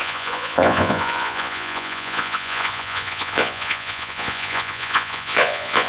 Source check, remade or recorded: remade